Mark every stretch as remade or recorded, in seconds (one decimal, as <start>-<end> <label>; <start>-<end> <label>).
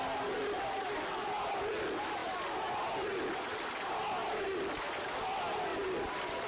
0.0-6.5 recorded